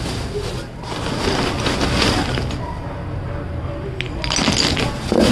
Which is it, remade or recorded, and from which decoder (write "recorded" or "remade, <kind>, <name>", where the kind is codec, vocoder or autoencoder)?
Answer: recorded